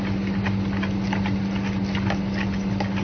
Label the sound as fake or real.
real